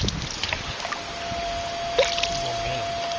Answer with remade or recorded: recorded